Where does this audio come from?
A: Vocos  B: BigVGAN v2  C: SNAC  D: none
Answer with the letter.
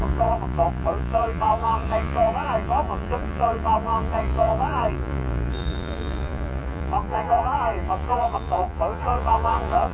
A